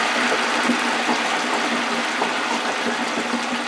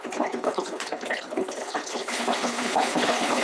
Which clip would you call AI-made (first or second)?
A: second